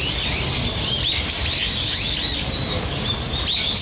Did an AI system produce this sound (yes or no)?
yes